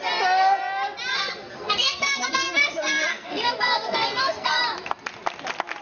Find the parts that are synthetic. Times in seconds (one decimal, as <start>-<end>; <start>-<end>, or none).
1.1-4.6